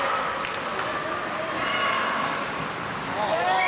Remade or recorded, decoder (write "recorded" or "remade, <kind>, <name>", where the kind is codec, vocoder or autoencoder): recorded